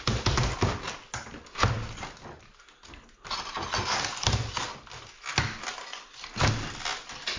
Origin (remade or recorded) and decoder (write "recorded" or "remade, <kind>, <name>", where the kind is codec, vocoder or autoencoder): recorded